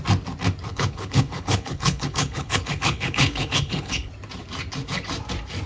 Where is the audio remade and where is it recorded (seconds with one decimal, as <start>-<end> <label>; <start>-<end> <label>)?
0.0-0.7 recorded; 0.7-4.1 remade; 4.1-5.7 recorded